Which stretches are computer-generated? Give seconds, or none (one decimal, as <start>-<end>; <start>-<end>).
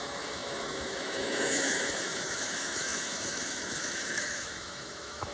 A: 0.0-5.3